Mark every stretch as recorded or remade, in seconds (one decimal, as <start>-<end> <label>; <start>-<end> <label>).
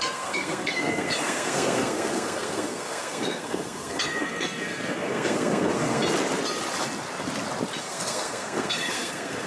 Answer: 0.0-6.0 remade; 6.0-7.8 recorded; 7.8-9.5 remade